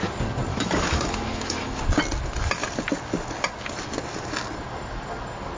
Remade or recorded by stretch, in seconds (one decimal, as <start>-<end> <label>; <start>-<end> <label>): 0.0-0.5 recorded; 0.5-1.8 remade; 1.8-5.6 recorded